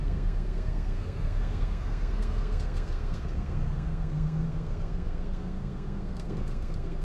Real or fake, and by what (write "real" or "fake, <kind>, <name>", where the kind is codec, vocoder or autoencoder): fake, codec, SNAC